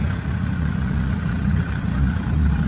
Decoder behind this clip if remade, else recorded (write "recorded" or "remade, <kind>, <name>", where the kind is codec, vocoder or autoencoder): remade, vocoder, Vocos